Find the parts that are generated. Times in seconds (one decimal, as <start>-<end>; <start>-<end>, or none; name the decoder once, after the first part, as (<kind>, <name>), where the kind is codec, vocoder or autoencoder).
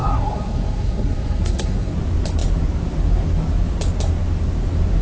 0.0-1.9 (codec, SNAC)